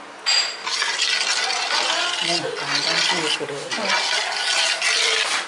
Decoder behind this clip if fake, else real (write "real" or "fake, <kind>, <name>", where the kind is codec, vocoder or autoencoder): real